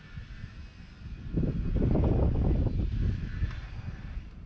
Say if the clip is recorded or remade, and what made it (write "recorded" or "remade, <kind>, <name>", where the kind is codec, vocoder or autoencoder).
recorded